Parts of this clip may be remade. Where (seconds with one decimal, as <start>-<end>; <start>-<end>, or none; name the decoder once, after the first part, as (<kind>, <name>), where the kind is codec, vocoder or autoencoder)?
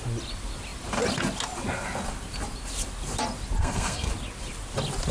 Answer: 3.6-4.1 (codec, SNAC)